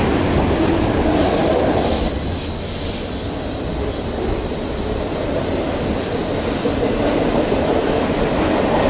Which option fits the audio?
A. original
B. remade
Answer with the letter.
A